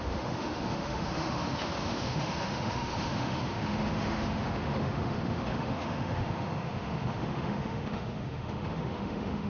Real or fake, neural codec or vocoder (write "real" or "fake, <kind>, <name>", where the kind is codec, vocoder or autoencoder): fake, autoencoder, DAC-VAE